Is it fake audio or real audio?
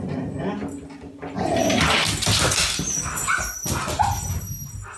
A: real